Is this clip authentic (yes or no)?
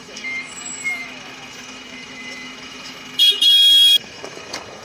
no